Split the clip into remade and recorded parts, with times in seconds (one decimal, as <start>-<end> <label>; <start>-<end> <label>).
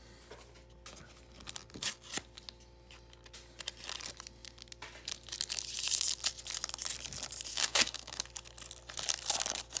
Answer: 0.0-7.5 recorded; 7.5-8.2 remade; 8.2-9.8 recorded